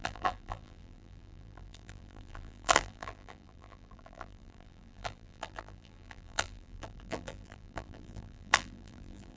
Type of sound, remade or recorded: remade